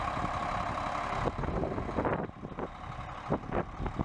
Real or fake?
real